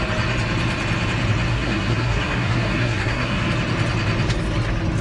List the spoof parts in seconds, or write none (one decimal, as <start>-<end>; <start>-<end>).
1.5-3.5